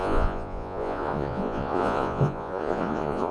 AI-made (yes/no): yes